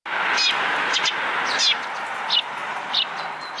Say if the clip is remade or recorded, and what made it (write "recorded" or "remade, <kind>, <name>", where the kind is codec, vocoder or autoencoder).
recorded